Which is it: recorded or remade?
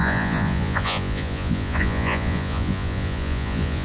remade